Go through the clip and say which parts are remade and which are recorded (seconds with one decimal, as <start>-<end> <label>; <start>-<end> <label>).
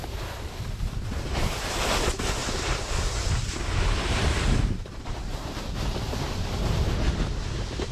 0.0-2.4 recorded; 2.4-6.9 remade; 6.9-7.9 recorded